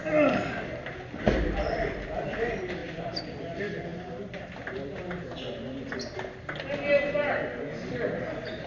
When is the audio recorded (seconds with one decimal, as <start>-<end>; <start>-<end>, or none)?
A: 0.0-8.7